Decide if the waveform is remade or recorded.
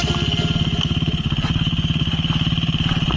recorded